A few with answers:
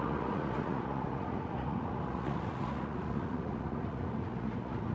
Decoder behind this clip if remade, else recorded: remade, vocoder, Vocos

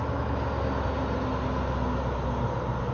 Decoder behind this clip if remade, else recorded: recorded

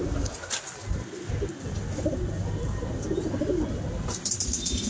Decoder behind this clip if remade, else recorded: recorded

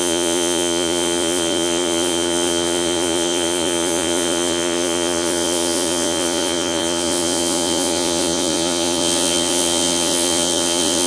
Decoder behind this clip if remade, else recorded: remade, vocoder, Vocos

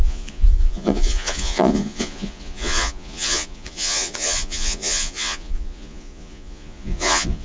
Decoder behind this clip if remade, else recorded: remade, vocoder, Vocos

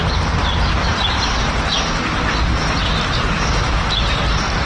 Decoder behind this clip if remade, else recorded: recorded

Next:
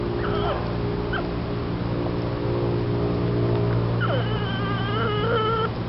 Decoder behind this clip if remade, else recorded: recorded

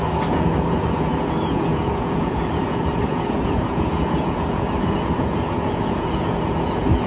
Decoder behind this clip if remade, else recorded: remade, vocoder, Vocos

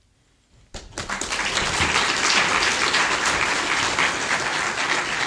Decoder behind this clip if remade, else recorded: recorded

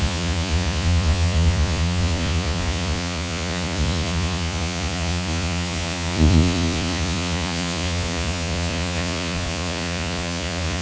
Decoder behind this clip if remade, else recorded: remade, vocoder, Vocos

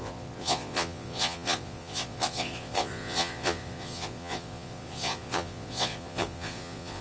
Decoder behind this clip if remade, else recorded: remade, vocoder, Vocos